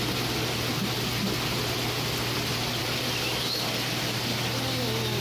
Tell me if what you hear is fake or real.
real